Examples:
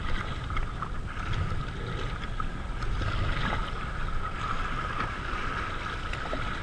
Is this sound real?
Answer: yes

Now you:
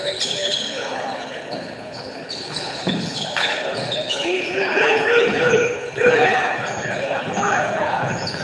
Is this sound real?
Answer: no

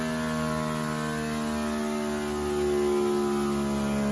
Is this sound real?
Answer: yes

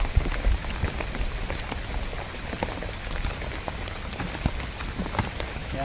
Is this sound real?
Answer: yes